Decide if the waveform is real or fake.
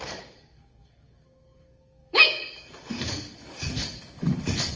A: fake